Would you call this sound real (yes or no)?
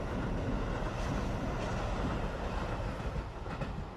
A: yes